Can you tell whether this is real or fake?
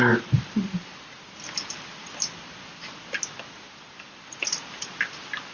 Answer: real